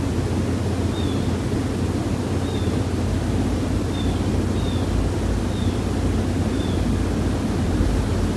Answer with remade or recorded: recorded